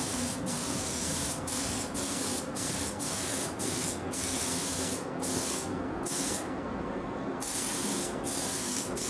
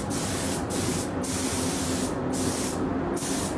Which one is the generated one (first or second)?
first